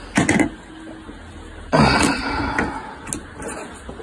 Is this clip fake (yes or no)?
no